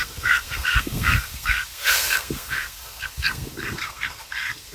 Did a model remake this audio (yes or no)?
yes